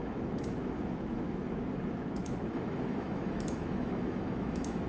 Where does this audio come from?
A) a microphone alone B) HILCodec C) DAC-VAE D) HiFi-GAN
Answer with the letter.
C